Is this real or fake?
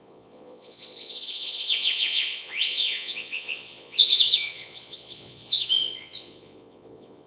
fake